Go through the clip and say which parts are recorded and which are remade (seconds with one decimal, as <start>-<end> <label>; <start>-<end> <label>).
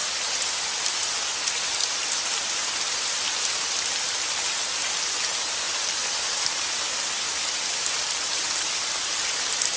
0.0-9.8 recorded